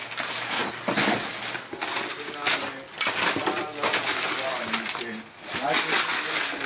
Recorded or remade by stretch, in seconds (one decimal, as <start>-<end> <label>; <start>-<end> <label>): 0.0-6.7 recorded